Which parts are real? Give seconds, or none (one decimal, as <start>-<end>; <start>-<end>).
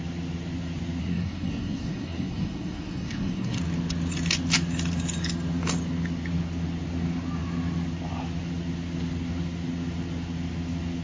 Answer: 0.0-1.0; 3.6-11.0